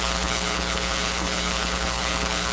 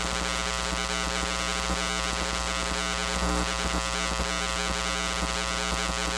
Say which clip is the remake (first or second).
first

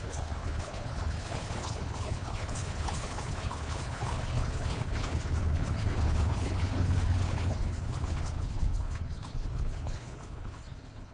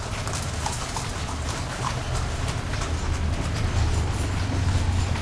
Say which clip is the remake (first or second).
first